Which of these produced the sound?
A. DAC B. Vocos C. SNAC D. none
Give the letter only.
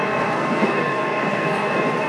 C